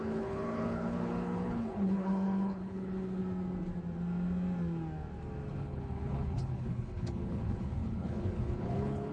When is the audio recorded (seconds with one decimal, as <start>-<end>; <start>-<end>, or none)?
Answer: 3.2-5.5